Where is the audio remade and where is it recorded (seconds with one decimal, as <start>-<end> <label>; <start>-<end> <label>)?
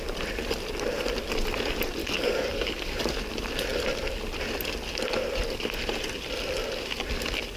0.0-2.0 recorded; 2.0-3.2 remade; 3.2-7.6 recorded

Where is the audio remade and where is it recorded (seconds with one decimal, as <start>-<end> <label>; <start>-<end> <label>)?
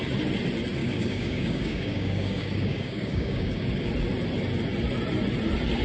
0.0-0.8 recorded; 0.8-3.9 remade; 3.9-5.8 recorded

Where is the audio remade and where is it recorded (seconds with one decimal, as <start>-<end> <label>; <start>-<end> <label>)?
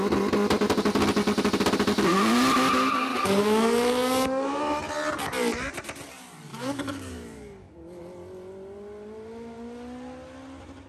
0.0-3.1 recorded; 3.1-4.8 remade; 4.8-6.5 recorded; 6.5-8.0 remade; 8.0-10.9 recorded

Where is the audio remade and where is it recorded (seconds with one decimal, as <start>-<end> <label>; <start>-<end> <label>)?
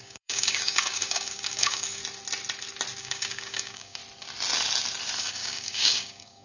0.0-2.0 remade; 2.0-3.0 recorded; 3.0-4.0 remade; 4.0-5.2 recorded; 5.2-6.4 remade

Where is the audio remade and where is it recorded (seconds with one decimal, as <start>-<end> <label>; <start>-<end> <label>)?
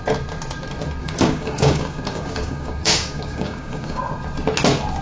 0.0-1.0 recorded; 1.0-4.0 remade; 4.0-5.0 recorded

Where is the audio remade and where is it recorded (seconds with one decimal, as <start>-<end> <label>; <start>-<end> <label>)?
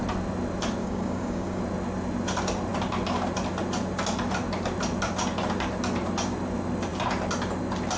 0.0-0.8 recorded; 0.8-1.6 remade; 1.6-8.0 recorded